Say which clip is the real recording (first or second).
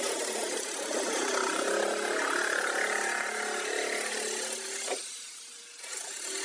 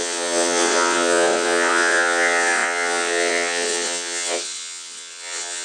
first